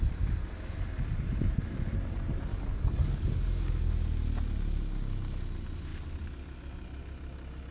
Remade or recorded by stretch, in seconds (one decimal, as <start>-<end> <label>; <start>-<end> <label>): 0.0-2.5 recorded; 2.5-3.7 remade; 3.7-7.7 recorded